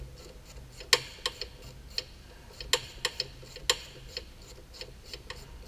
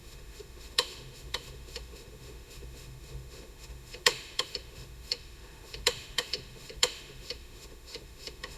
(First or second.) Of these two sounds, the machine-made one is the second